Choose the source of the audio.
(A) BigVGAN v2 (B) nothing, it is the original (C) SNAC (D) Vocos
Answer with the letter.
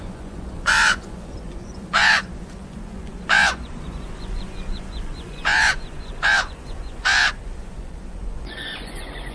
D